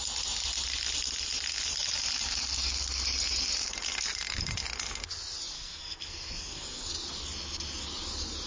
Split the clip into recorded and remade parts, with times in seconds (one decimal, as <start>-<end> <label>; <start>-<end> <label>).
0.0-5.5 recorded; 5.5-6.9 remade; 6.9-8.5 recorded